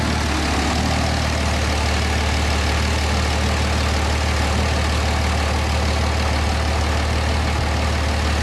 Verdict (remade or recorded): recorded